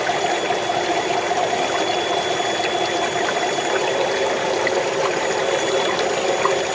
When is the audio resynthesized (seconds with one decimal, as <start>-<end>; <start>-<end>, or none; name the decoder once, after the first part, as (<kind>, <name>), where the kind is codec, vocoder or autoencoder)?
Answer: none